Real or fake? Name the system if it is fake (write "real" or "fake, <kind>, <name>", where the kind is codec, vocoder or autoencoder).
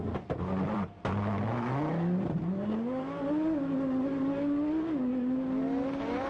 real